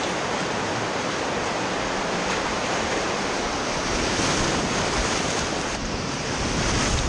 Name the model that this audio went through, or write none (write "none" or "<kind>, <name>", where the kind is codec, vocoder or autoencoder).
none